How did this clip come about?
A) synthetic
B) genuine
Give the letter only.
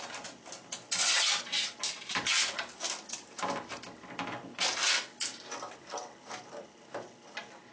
B